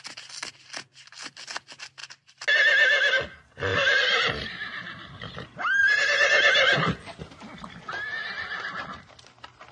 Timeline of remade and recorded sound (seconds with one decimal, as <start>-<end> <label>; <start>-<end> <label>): 0.0-3.7 recorded; 3.7-7.2 remade; 7.2-9.7 recorded